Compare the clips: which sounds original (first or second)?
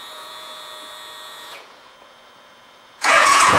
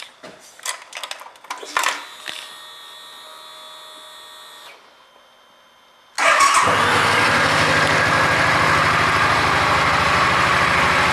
second